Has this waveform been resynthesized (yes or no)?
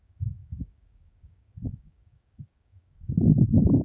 yes